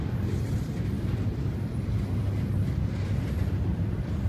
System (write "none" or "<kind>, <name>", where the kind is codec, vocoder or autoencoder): none